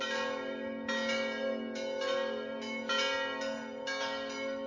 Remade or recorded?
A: recorded